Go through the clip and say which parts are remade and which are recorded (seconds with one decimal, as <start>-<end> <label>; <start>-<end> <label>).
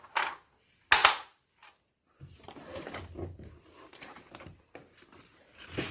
0.0-5.9 recorded